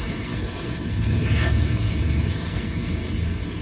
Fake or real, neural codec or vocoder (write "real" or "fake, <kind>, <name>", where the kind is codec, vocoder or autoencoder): fake, codec, SNAC